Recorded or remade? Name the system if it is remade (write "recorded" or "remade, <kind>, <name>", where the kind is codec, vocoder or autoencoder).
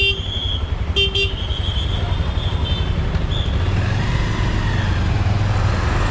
recorded